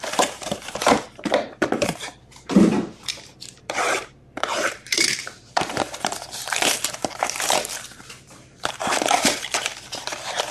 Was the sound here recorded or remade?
remade